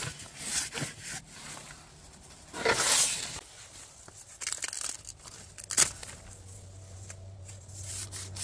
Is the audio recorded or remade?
recorded